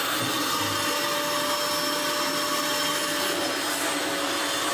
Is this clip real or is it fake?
real